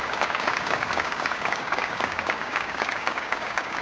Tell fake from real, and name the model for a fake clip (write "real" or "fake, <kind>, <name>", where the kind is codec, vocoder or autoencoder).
fake, codec, DAC